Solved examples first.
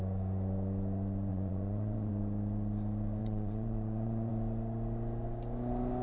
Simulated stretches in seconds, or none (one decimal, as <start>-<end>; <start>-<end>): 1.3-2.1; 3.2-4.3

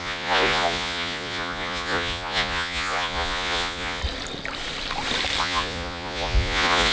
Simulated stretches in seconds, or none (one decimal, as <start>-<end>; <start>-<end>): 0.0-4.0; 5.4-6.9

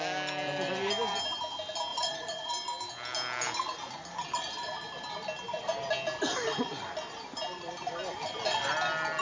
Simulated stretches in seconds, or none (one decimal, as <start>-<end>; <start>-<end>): 1.9-2.5

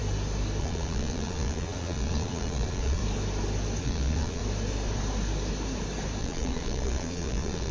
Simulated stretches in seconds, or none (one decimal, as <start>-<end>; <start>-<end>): 0.6-3.0; 3.8-4.4; 6.2-7.7